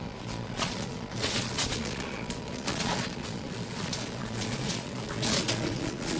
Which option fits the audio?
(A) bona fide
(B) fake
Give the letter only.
B